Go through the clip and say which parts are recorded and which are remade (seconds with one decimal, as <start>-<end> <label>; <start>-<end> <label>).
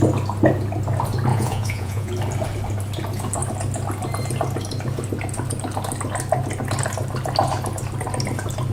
0.0-1.3 recorded; 1.3-2.1 remade; 2.1-8.7 recorded